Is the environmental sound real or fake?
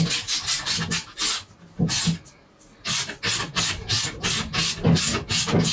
real